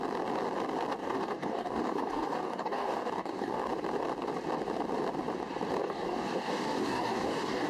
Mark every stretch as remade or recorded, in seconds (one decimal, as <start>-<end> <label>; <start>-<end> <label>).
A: 0.0-1.0 recorded; 1.0-3.7 remade; 3.7-5.8 recorded; 5.8-7.7 remade